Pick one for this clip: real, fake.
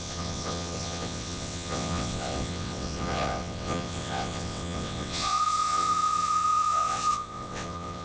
fake